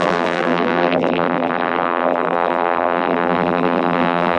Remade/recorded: remade